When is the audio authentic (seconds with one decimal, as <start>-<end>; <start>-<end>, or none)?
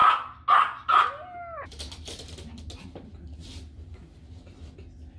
0.0-5.2